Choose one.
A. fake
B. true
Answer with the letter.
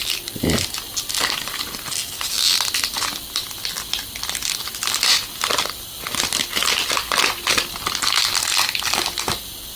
B